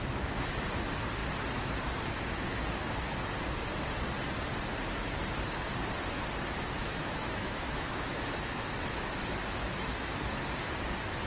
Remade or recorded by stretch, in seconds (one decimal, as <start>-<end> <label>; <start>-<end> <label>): 0.0-6.8 recorded; 6.8-9.2 remade; 9.2-9.6 recorded; 9.6-10.2 remade; 10.2-11.3 recorded